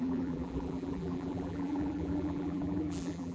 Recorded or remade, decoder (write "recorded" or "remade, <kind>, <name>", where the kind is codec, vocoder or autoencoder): remade, vocoder, BigVGAN v2